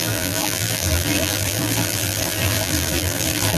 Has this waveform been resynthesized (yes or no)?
yes